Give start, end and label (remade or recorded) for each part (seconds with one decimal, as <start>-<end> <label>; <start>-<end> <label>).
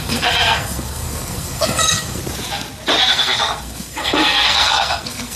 0.0-2.2 remade; 2.2-3.1 recorded; 3.1-5.4 remade